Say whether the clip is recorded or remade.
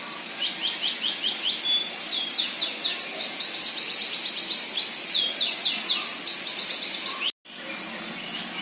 recorded